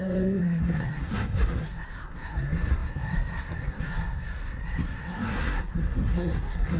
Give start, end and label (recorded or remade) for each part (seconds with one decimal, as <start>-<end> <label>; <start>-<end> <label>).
0.0-6.8 remade